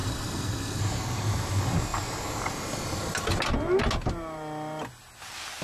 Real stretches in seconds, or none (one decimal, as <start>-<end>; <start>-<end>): 0.8-5.6